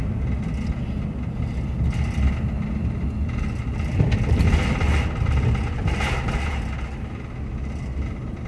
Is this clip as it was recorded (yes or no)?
yes